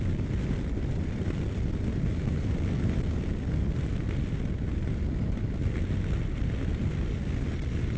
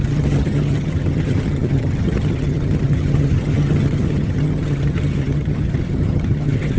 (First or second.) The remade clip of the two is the second